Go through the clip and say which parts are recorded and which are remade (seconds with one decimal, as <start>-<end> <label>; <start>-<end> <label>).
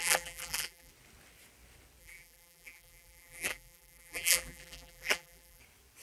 0.0-0.9 remade; 0.9-2.0 recorded; 2.0-5.6 remade; 5.6-6.0 recorded